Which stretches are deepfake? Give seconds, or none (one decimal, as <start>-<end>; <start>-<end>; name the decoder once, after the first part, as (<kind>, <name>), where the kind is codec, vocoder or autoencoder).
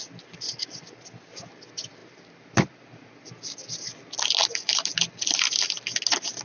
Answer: none